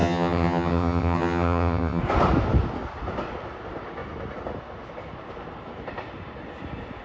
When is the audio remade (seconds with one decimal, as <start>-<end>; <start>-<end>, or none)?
0.0-2.0